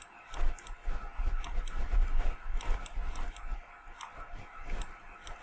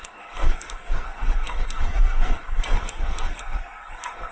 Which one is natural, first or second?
first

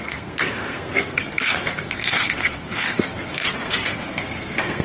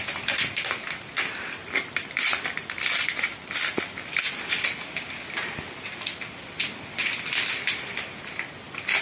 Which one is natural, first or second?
second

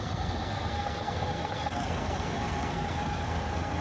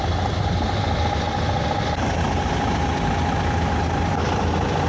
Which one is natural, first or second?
second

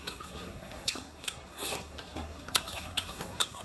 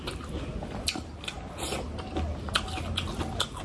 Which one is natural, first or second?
second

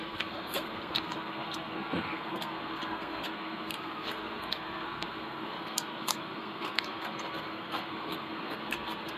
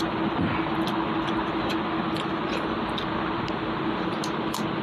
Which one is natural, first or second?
second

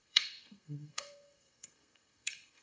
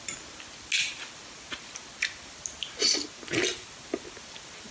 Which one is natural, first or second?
second